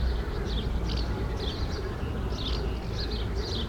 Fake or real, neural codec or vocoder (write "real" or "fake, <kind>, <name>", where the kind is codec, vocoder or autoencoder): real